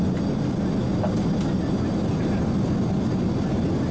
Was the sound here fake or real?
real